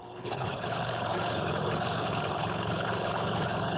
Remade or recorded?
remade